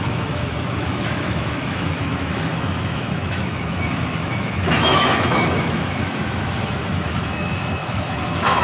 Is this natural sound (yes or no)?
no